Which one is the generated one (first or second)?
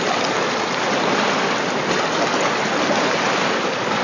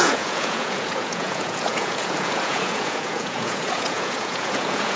second